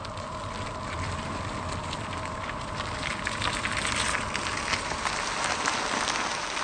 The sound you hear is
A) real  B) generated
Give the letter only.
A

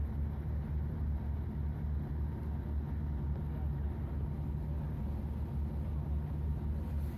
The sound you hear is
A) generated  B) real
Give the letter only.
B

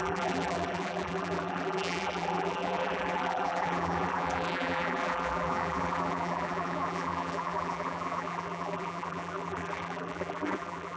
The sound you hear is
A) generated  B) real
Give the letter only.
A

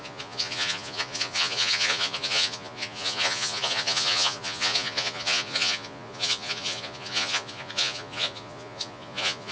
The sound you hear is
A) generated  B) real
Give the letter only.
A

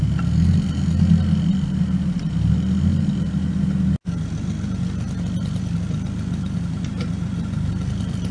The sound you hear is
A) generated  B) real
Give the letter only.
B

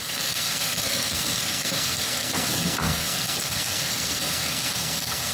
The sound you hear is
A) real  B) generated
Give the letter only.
B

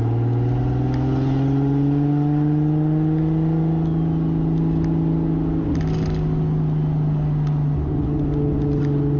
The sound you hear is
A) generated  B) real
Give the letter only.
B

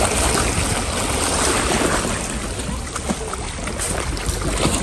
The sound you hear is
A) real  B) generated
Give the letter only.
A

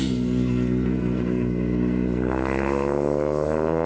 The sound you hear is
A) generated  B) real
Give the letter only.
A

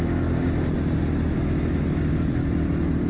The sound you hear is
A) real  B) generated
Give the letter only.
A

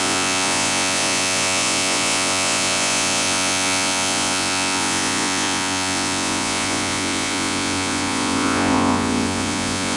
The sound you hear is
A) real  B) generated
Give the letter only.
B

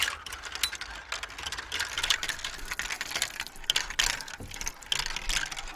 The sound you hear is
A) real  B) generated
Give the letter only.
A